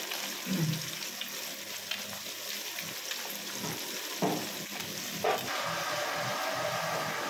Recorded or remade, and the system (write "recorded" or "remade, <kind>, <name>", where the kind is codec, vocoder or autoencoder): recorded